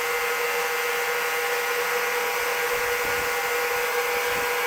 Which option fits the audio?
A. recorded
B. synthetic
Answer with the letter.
A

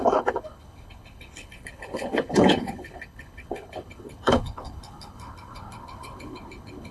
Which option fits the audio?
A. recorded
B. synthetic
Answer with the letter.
B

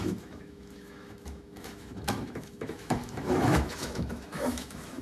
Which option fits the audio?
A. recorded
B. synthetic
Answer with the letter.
B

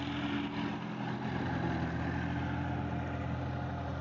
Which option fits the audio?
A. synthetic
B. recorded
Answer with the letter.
B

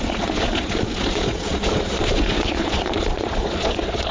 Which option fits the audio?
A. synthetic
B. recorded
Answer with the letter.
A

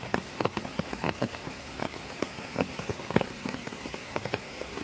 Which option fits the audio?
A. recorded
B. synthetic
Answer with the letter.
B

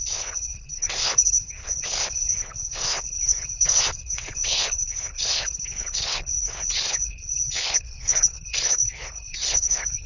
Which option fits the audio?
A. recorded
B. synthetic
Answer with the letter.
B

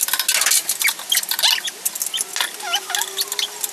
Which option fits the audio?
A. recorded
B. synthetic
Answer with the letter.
A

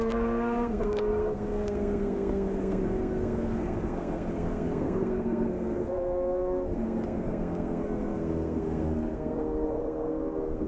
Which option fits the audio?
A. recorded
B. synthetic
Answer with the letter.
B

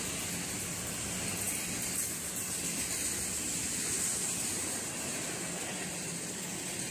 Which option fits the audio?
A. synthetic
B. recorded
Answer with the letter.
B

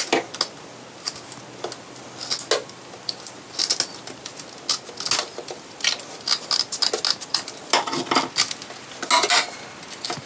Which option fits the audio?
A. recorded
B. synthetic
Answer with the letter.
A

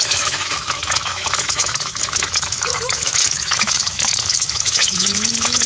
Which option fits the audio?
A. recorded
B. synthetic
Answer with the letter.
B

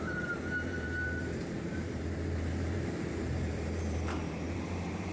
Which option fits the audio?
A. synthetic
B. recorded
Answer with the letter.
A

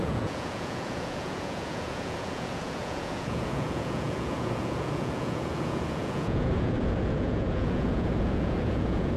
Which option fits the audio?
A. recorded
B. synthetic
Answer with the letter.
B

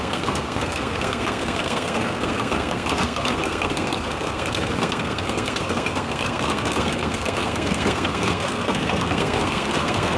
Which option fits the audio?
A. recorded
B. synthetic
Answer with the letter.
B